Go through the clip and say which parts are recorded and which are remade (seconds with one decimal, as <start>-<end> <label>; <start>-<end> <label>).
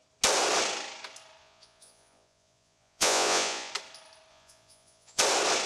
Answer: 0.0-1.4 recorded; 1.4-3.7 remade; 3.7-4.3 recorded; 4.3-5.2 remade; 5.2-5.7 recorded